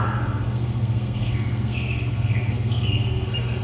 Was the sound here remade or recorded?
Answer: remade